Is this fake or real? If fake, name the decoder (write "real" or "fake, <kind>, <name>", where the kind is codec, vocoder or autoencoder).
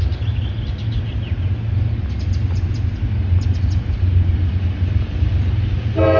real